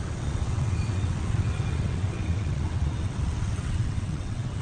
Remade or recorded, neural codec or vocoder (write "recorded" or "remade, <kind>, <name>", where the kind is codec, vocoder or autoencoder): remade, vocoder, WaveNeXt